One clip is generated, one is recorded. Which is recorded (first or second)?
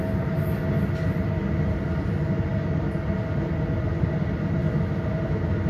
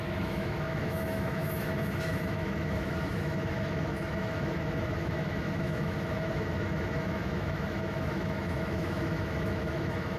first